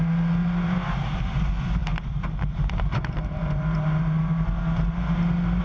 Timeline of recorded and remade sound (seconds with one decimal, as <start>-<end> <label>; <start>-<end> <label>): 0.0-0.4 recorded; 0.4-1.2 remade; 1.2-1.8 recorded; 1.8-5.6 remade